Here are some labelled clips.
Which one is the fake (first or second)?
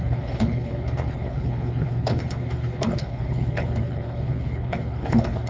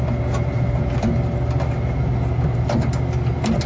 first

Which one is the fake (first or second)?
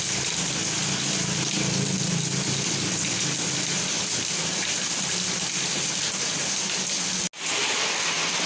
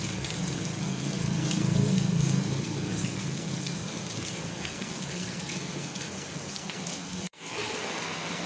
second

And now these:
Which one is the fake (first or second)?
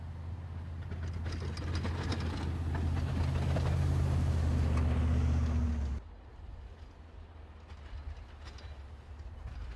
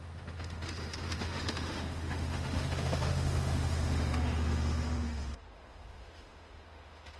second